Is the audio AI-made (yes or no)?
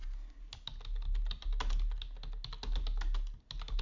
no